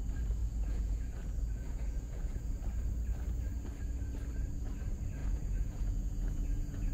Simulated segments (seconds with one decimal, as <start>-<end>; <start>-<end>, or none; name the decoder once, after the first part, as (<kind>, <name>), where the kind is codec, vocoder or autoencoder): 0.4-2.5 (vocoder, Vocos); 5.2-6.9